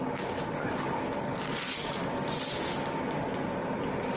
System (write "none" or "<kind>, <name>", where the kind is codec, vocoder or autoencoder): none